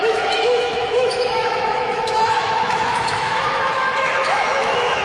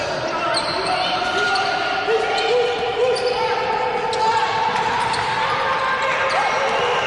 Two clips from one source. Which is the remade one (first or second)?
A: first